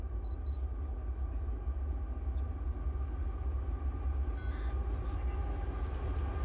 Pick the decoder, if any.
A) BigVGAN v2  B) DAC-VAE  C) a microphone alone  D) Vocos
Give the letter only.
C